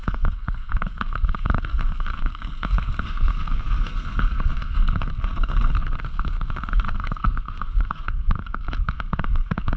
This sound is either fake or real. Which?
fake